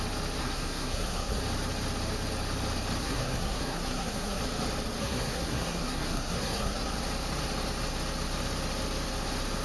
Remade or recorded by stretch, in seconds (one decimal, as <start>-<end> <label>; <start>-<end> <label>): 0.0-0.4 recorded; 0.4-1.4 remade; 1.4-3.0 recorded; 3.0-4.4 remade; 4.4-5.0 recorded; 5.0-6.9 remade; 6.9-9.6 recorded